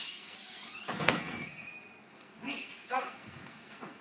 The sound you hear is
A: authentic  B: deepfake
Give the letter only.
B